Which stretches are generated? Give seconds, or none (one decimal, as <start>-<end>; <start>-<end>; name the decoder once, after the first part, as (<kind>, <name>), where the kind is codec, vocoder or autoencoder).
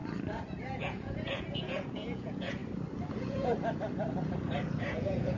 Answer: 0.6-2.6 (vocoder, Vocos); 3.1-3.5; 4.9-5.4